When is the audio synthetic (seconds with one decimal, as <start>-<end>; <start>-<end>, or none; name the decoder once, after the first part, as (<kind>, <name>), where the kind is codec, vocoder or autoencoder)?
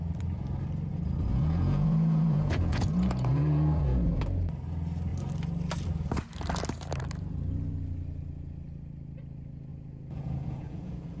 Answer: 1.3-4.2 (vocoder, Vocos); 9.7-11.2